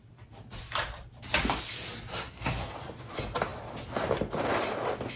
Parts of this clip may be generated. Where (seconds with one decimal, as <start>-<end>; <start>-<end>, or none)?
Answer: 2.1-2.7